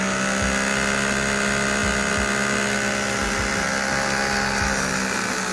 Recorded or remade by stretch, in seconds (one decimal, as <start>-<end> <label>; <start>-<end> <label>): 0.0-5.5 recorded